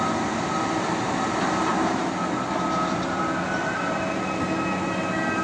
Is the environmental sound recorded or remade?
recorded